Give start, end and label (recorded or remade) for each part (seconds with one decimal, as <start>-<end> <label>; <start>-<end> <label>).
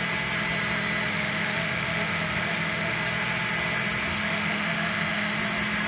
0.0-1.1 recorded; 1.1-3.0 remade; 3.0-4.1 recorded; 4.1-5.4 remade; 5.4-5.9 recorded